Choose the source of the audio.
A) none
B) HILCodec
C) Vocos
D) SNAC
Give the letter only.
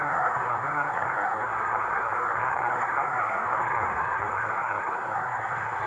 D